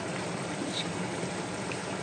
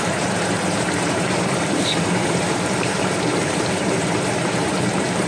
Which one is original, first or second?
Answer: first